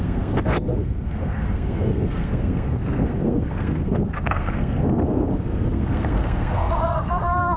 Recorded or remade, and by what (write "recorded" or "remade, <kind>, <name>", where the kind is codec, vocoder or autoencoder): remade, codec, SNAC